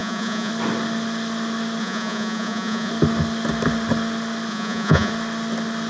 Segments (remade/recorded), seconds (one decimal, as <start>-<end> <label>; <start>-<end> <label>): 0.0-0.5 remade; 0.5-1.8 recorded; 1.8-2.9 remade; 2.9-4.5 recorded; 4.5-5.1 remade; 5.1-5.9 recorded

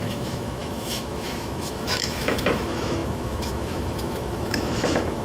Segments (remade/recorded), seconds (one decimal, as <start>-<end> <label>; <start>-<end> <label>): 0.0-5.2 remade